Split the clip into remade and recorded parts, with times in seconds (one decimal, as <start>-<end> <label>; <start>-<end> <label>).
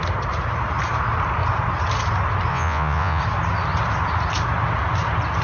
0.0-2.5 recorded; 2.5-3.2 remade; 3.2-5.4 recorded